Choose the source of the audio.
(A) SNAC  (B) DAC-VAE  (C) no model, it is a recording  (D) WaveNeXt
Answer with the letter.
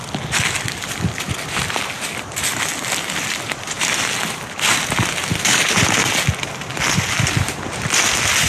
C